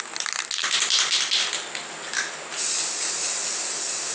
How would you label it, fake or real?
real